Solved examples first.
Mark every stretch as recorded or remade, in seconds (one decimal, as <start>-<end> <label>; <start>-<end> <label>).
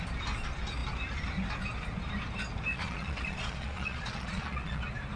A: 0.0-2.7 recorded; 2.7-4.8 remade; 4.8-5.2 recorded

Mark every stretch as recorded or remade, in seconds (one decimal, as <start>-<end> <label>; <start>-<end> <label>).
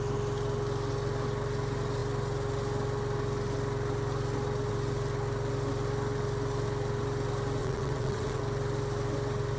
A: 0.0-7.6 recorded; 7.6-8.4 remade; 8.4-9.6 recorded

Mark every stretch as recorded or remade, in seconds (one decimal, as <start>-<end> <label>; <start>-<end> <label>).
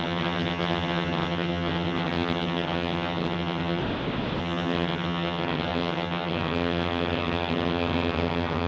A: 0.0-3.8 remade; 3.8-4.4 recorded; 4.4-8.7 remade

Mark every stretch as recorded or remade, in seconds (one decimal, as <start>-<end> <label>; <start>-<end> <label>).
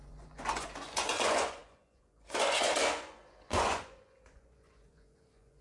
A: 0.0-5.6 remade